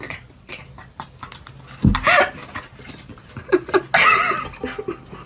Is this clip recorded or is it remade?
recorded